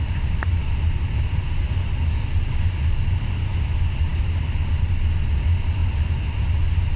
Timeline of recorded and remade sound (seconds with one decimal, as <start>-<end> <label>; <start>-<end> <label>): 0.0-7.0 recorded